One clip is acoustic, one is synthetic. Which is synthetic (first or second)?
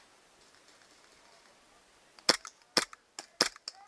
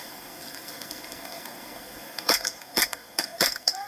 second